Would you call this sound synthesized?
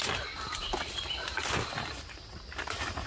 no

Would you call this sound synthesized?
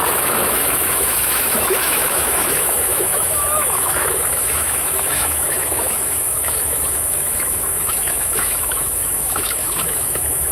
yes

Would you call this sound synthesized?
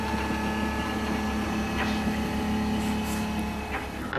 no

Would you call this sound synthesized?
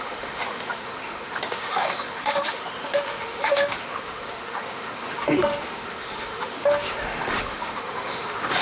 yes